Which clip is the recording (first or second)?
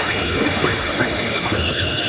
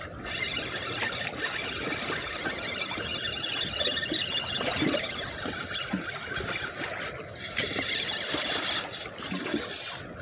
second